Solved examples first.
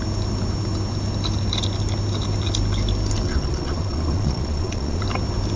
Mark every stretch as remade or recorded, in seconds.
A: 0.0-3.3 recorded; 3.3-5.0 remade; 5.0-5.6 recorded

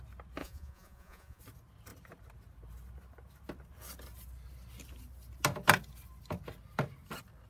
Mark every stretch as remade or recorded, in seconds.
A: 0.0-0.4 recorded; 0.4-1.4 remade; 1.4-7.5 recorded

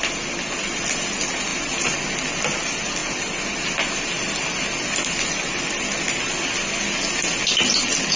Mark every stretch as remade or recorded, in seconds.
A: 0.0-8.2 recorded

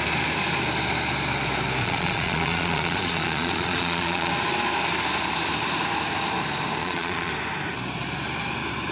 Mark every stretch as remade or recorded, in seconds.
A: 0.0-1.8 recorded; 1.8-4.3 remade; 4.3-6.8 recorded; 6.8-7.3 remade; 7.3-8.9 recorded

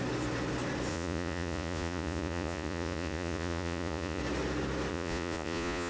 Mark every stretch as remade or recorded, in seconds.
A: 0.0-0.9 recorded; 0.9-4.2 remade; 4.2-4.9 recorded; 4.9-5.9 remade